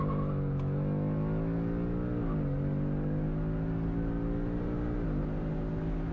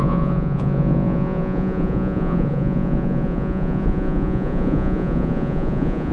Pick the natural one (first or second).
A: first